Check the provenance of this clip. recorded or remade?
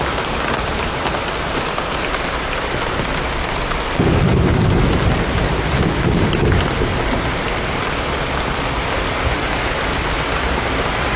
recorded